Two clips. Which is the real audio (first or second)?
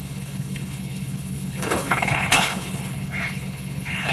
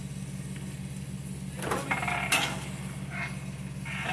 second